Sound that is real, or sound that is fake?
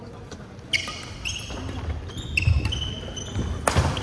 real